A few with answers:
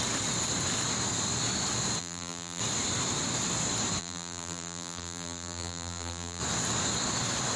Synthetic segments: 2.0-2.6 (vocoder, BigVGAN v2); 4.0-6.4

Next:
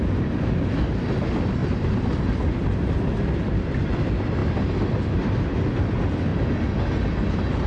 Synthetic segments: 1.6-2.3 (vocoder, BigVGAN v2)

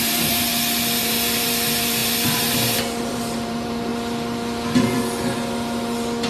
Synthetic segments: 0.0-0.5 (vocoder, BigVGAN v2); 1.0-3.9

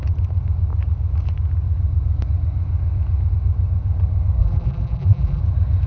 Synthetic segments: 4.4-5.4 (vocoder, BigVGAN v2)

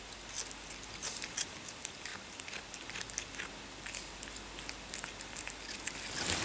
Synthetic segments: 1.0-1.6 (vocoder, BigVGAN v2); 2.1-3.5

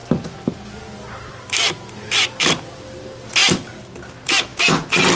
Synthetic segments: none